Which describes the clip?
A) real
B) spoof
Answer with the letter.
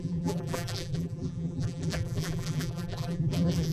B